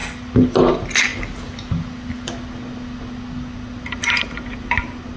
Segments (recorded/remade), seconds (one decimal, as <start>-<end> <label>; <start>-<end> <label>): 0.0-5.2 recorded